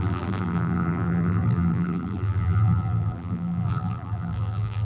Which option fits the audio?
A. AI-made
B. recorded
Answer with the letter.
A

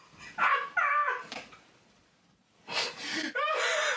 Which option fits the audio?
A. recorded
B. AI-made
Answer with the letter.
A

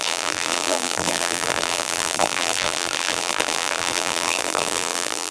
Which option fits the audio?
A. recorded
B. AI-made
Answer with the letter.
B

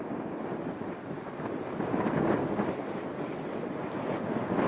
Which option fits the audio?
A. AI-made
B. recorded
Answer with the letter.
B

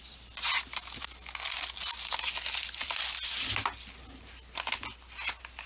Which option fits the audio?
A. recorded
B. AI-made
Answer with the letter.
A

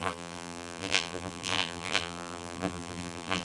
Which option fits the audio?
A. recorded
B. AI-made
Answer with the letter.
B